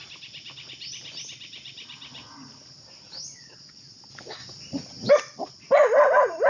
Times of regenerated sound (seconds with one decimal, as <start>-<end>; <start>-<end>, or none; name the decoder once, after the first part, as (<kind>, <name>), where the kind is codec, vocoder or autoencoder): none